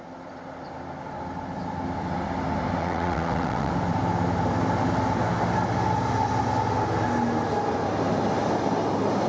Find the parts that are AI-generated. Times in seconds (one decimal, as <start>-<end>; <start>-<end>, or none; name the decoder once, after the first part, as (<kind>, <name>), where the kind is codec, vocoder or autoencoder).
2.8-3.7 (vocoder, WaveNeXt)